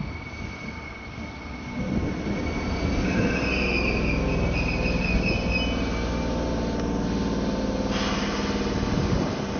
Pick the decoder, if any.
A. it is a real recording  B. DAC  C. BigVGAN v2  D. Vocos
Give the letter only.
A